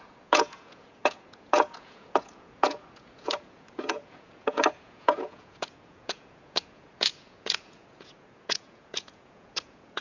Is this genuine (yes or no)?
no